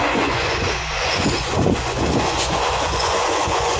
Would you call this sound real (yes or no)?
no